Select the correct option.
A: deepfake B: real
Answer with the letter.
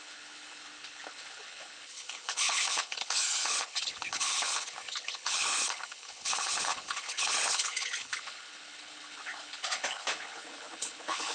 A